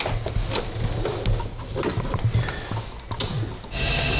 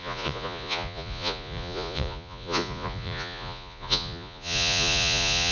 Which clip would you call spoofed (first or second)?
second